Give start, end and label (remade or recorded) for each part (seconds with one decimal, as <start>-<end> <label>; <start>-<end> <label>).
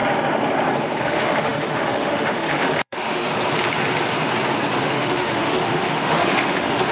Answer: 0.0-1.0 recorded; 1.0-3.3 remade; 3.3-4.8 recorded; 4.8-6.9 remade